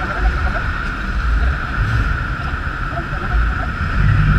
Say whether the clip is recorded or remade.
recorded